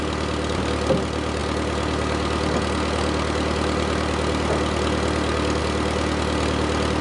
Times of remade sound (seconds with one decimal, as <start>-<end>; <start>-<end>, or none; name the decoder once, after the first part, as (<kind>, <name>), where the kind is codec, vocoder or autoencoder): none